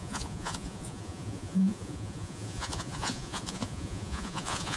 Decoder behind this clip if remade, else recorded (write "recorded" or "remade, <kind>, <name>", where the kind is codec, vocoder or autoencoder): remade, vocoder, Vocos